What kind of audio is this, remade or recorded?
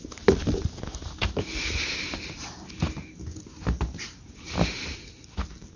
recorded